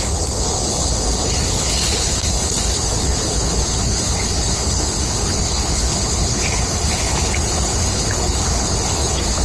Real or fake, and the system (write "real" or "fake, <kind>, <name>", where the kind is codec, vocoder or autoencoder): fake, codec, HILCodec